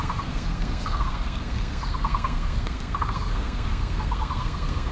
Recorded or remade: remade